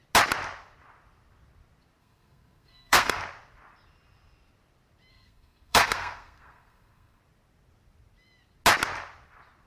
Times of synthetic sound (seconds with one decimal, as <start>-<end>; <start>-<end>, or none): 2.0-3.2; 5.1-7.2